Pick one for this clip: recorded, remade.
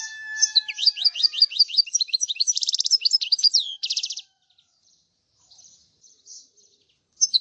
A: remade